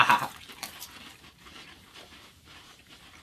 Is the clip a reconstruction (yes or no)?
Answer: yes